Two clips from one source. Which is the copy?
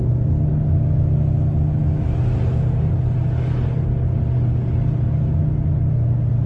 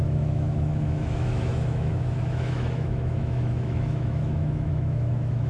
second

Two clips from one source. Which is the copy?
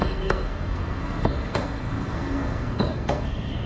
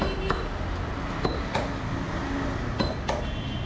first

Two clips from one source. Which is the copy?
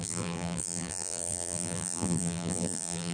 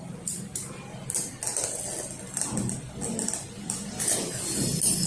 first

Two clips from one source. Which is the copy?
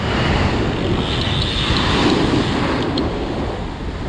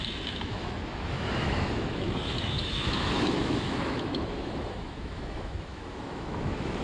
second